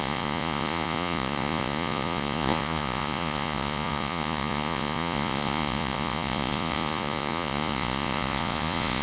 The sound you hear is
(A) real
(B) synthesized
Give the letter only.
B